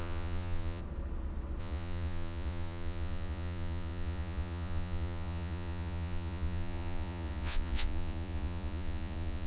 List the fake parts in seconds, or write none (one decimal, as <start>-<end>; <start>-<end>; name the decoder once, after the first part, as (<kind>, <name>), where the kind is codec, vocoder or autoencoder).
0.0-0.8 (vocoder, Vocos); 1.6-9.5